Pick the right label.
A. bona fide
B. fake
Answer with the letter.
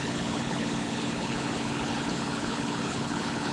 B